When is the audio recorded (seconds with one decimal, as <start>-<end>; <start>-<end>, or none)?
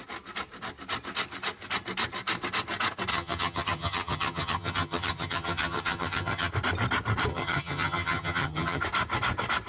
0.0-3.1; 6.5-7.3; 8.8-9.7